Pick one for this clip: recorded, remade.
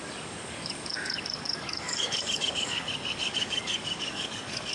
remade